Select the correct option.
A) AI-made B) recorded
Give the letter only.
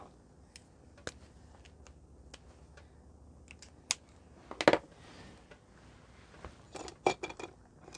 B